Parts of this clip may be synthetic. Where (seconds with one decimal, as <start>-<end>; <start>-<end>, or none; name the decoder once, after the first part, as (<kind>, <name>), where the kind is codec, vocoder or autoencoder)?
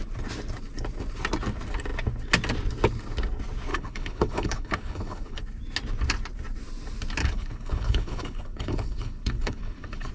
3.7-5.4 (codec, HILCodec); 7.2-10.1